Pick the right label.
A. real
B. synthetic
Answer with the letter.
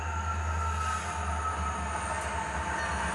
A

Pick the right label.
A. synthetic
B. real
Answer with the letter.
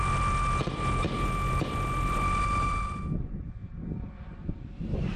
B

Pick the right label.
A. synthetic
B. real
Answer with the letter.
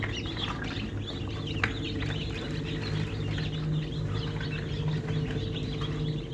B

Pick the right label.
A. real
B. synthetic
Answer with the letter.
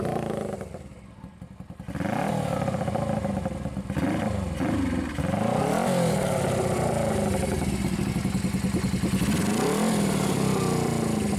A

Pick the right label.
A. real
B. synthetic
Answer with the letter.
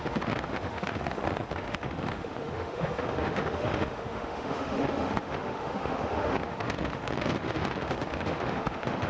B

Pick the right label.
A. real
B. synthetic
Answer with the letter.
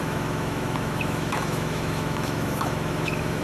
B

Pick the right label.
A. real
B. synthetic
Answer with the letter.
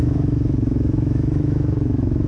B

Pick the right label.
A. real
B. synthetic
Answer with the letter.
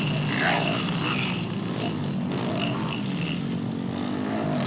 A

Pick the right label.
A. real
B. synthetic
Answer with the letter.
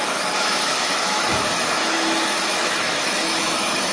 B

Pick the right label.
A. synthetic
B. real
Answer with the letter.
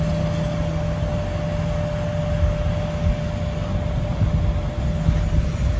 B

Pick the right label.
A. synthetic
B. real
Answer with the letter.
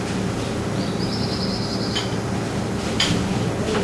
B